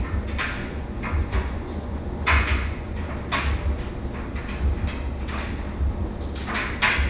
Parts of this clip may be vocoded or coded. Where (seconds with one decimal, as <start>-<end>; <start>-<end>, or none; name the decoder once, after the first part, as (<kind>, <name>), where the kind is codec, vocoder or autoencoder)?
0.6-3.1 (vocoder, Vocos)